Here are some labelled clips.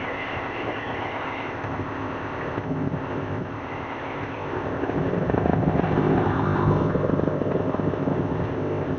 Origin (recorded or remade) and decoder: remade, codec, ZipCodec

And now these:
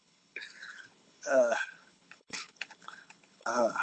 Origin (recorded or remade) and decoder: remade, codec, HILCodec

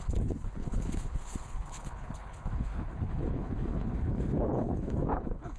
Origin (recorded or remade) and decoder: remade, codec, HILCodec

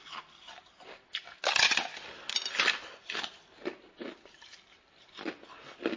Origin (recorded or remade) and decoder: recorded